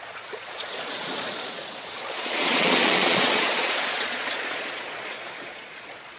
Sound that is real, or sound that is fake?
fake